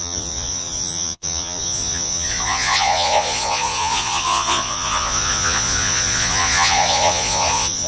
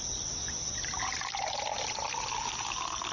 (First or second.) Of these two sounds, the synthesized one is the first